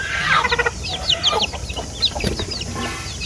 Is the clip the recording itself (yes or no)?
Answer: yes